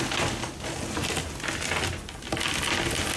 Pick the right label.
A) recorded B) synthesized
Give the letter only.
A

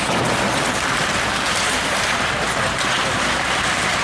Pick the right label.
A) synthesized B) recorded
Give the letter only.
A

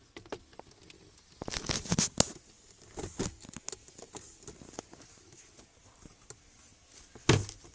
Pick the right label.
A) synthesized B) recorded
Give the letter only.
B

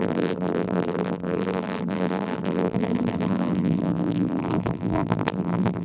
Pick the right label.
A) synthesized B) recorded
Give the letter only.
A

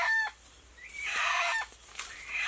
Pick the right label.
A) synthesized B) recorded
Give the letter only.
B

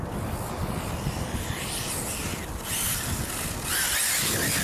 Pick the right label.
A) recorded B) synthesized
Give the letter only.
A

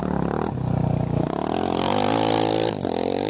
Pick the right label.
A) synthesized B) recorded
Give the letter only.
B